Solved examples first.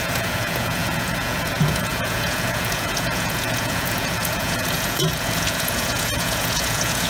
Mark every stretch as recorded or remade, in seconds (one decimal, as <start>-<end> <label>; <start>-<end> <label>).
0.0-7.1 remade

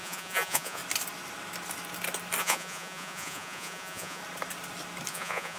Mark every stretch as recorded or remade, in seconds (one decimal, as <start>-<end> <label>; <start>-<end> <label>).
0.0-0.8 remade; 0.8-2.4 recorded; 2.4-4.2 remade; 4.2-5.1 recorded; 5.1-5.6 remade

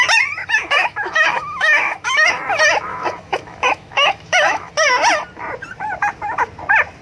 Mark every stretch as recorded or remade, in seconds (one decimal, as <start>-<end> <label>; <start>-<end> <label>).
0.0-0.4 recorded; 0.4-2.3 remade; 2.3-2.9 recorded; 2.9-4.7 remade; 4.7-7.0 recorded

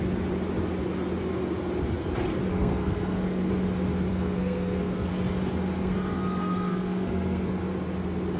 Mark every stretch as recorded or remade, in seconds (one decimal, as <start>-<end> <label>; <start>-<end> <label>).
0.0-2.5 recorded; 2.5-3.5 remade; 3.5-4.1 recorded; 4.1-5.1 remade; 5.1-5.8 recorded; 5.8-7.6 remade; 7.6-8.4 recorded